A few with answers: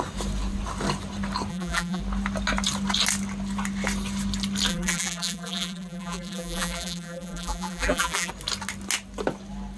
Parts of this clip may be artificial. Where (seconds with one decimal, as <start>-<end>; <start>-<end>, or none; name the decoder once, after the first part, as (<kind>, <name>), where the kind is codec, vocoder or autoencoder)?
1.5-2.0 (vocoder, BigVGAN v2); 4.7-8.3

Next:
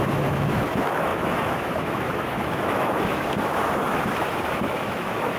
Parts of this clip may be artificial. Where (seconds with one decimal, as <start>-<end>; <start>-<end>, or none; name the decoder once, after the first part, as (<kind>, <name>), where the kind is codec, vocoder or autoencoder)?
0.0-5.4 (autoencoder, DAC-VAE)

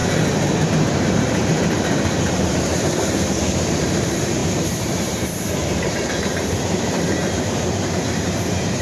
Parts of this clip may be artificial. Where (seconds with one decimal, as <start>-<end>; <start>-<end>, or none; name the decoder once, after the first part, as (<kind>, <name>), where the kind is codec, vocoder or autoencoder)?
0.0-8.8 (vocoder, BigVGAN v2)

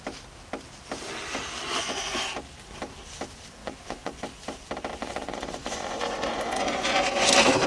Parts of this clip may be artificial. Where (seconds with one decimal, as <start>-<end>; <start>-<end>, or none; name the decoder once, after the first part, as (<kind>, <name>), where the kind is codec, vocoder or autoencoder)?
1.6-2.2 (vocoder, Vocos); 3.6-4.2; 5.0-7.3

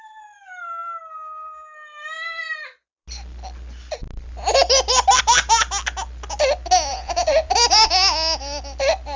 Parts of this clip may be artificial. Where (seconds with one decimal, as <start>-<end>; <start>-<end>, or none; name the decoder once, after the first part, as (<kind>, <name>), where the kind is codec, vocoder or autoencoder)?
6.9-7.5 (vocoder, Vocos)